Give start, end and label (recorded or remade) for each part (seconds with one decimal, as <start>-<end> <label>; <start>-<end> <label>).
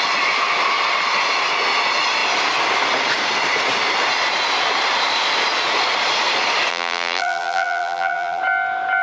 0.0-6.7 recorded; 6.7-8.4 remade; 8.4-9.0 recorded